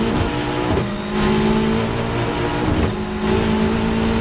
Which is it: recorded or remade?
recorded